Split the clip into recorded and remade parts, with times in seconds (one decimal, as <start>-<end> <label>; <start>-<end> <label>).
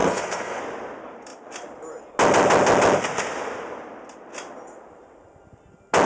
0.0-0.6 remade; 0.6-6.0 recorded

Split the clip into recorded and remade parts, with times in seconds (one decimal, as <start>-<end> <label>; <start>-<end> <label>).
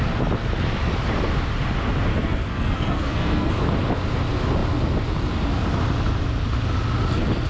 0.0-2.1 recorded; 2.1-3.5 remade; 3.5-7.5 recorded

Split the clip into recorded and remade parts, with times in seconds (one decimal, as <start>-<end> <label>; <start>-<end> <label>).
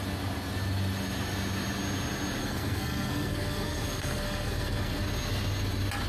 0.0-2.4 recorded; 2.4-5.0 remade; 5.0-6.1 recorded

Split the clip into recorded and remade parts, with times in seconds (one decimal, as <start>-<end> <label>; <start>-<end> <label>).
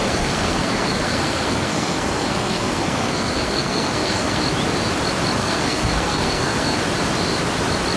0.0-4.4 remade; 4.4-5.4 recorded; 5.4-6.8 remade; 6.8-8.0 recorded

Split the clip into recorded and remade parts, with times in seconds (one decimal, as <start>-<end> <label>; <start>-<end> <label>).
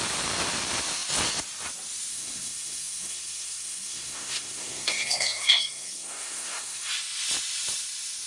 0.0-2.1 recorded; 2.1-6.9 remade; 6.9-8.3 recorded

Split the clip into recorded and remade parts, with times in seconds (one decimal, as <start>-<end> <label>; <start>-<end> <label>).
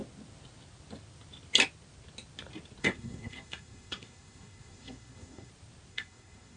0.0-2.8 recorded; 2.8-5.5 remade; 5.5-5.9 recorded; 5.9-6.6 remade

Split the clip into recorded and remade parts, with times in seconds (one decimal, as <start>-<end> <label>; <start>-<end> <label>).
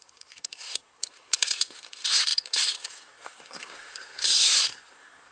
0.0-5.3 remade